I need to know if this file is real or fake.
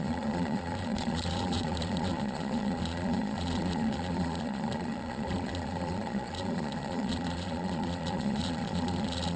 fake